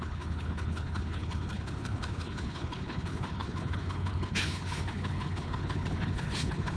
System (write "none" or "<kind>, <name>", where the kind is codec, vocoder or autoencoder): codec, HILCodec